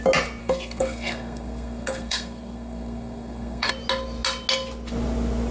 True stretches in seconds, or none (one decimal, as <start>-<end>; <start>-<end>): 0.0-0.4; 3.7-5.5